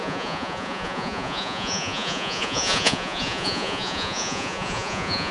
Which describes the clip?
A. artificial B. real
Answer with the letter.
A